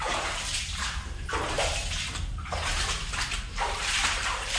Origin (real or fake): fake